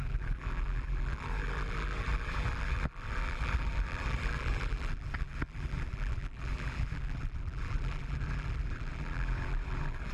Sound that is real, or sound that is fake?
fake